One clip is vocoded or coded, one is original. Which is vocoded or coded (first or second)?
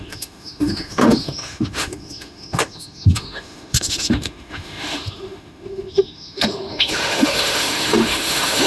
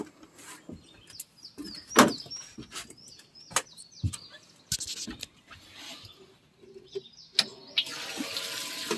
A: first